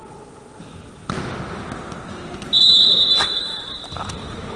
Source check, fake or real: real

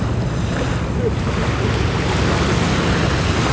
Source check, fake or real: real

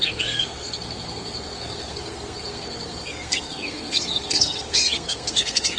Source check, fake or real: fake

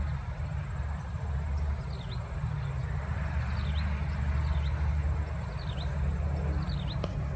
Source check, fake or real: real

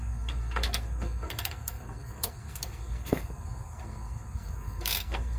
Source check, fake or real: fake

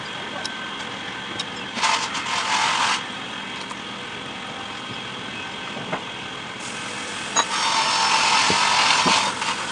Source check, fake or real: real